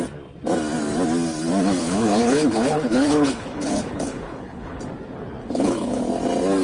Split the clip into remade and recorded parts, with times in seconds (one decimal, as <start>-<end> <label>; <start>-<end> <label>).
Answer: 0.0-1.8 recorded; 1.8-4.8 remade; 4.8-5.4 recorded; 5.4-6.0 remade; 6.0-6.6 recorded